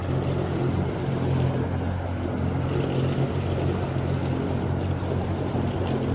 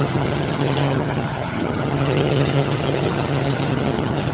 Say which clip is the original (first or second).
first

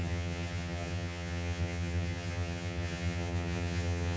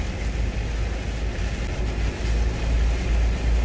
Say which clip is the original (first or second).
second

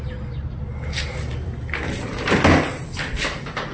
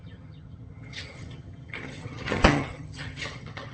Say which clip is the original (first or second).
first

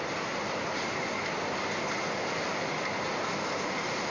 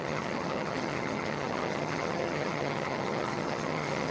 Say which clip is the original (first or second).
first